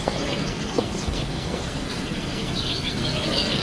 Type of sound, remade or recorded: remade